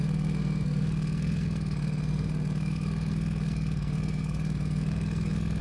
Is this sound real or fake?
fake